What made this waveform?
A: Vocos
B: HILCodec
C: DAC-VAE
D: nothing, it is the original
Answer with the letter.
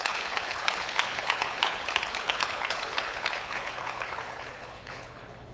B